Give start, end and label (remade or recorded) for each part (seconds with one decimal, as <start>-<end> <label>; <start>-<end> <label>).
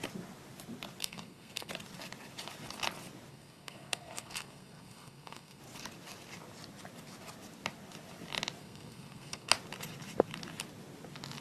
0.0-1.0 recorded; 1.0-1.7 remade; 1.7-3.3 recorded; 3.3-5.6 remade; 5.6-8.6 recorded; 8.6-9.5 remade; 9.5-11.4 recorded